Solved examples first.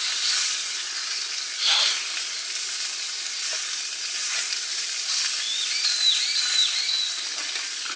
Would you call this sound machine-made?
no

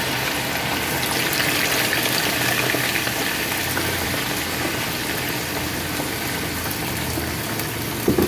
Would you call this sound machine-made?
no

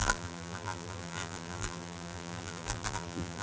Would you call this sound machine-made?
yes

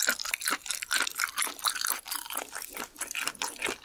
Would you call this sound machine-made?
yes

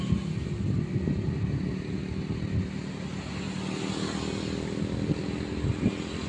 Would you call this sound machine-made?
no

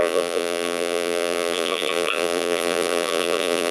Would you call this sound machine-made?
yes